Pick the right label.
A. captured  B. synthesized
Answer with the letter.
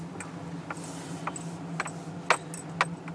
A